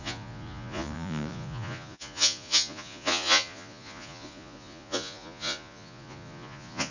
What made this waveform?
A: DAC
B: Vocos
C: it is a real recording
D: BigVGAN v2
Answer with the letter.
B